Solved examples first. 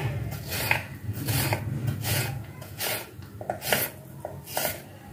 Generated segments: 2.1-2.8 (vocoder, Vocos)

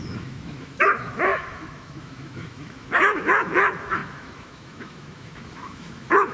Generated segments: 0.0-6.3 (autoencoder, DAC-VAE)